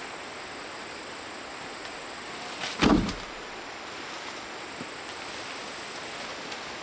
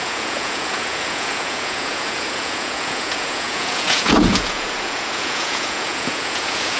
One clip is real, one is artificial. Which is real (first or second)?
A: first